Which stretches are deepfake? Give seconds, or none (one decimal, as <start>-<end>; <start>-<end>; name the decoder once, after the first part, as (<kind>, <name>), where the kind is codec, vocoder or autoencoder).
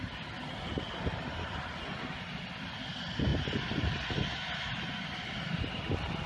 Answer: none